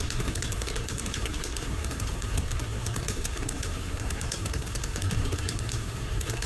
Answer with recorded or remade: remade